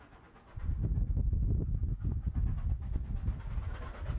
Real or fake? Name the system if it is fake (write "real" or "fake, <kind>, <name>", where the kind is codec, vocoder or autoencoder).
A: real